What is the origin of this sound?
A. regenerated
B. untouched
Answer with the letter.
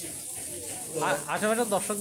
B